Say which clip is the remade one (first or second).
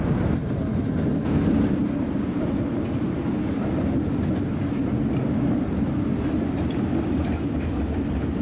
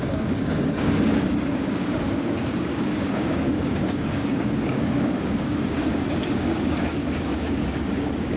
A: second